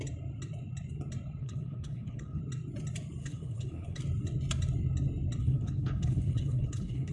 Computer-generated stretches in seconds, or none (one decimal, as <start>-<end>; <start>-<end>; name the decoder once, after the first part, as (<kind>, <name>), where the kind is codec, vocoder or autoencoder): 1.4-2.4 (codec, HILCodec); 3.2-4.0; 5.4-7.1